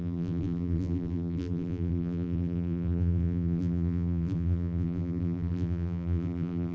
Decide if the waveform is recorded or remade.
remade